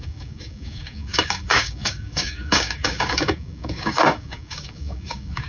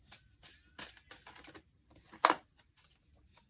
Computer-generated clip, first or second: first